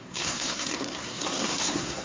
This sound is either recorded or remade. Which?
remade